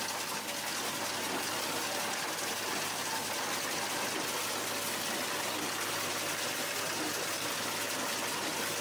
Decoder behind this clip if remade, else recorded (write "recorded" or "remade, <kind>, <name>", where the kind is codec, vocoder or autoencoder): recorded